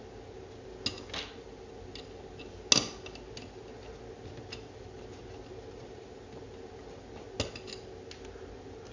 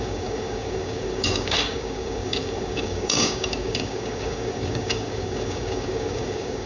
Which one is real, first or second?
first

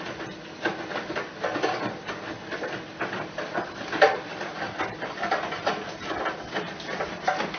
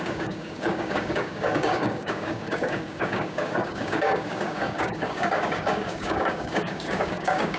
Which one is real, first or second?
first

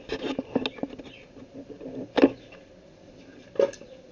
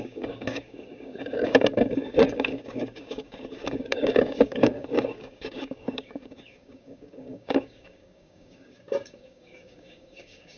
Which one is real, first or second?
first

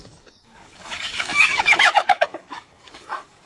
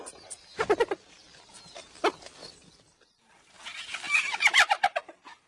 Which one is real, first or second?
second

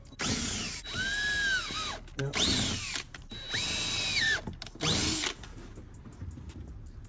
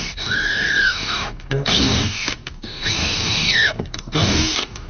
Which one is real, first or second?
first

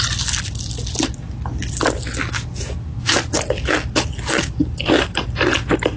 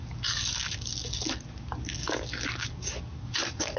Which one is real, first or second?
first